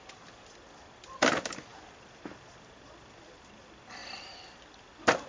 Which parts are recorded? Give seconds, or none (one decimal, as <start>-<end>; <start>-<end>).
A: 0.0-5.3